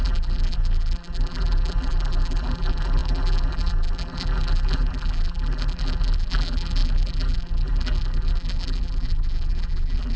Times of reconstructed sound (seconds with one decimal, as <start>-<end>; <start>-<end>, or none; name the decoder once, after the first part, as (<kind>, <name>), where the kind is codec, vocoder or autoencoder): 0.0-10.2 (vocoder, BigVGAN v2)